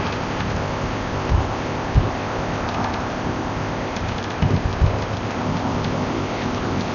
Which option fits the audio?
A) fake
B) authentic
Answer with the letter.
A